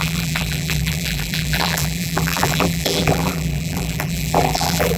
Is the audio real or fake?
fake